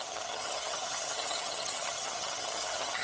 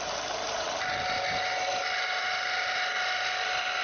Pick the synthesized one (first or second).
first